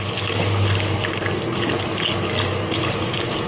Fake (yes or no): no